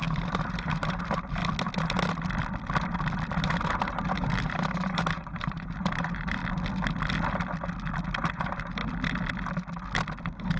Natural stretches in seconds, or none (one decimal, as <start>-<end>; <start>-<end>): 1.4-3.4; 6.4-8.4; 8.8-10.2